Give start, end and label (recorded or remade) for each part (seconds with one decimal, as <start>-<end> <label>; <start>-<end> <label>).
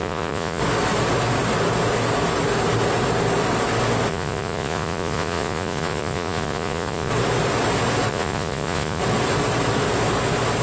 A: 0.0-0.6 remade; 0.6-4.1 recorded; 4.1-7.1 remade; 7.1-8.1 recorded; 8.1-9.0 remade; 9.0-10.6 recorded